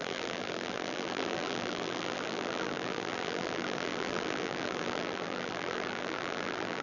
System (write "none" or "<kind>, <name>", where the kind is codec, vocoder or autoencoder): vocoder, BigVGAN v2